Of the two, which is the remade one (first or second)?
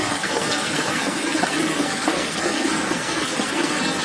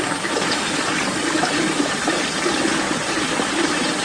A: first